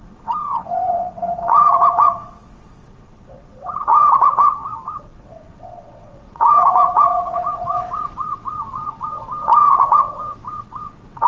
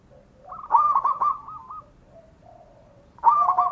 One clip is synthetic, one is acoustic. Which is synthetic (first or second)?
first